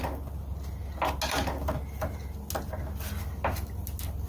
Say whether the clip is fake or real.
real